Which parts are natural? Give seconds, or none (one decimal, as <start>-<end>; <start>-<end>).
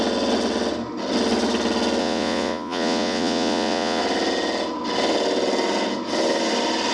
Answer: 0.0-2.0; 4.0-6.9